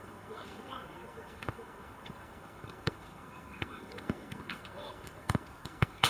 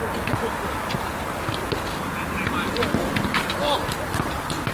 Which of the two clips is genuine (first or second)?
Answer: second